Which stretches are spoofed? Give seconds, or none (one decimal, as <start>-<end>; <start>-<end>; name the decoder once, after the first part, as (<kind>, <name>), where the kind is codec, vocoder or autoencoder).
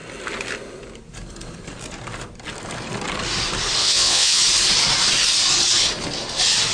3.8-4.4 (vocoder, Vocos)